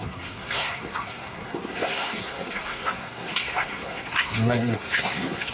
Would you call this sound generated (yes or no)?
yes